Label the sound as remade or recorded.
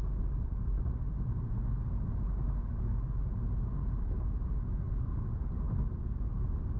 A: recorded